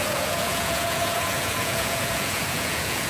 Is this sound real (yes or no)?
no